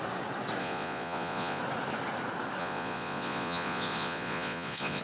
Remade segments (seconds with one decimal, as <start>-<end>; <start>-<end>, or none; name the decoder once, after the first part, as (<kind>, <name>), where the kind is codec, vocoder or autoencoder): 0.6-1.6 (vocoder, Vocos); 2.6-5.0